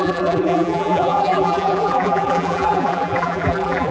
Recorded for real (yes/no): no